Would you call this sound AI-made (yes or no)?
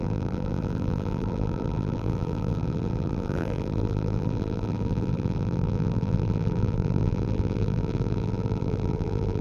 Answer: yes